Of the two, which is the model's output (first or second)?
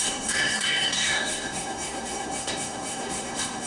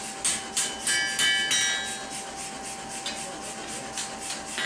first